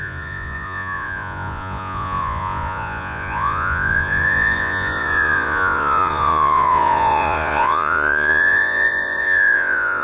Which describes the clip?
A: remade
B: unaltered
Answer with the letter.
A